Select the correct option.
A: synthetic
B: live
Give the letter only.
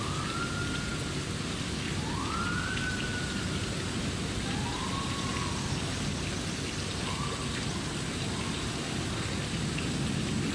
B